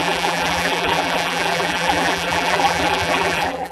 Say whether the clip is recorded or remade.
remade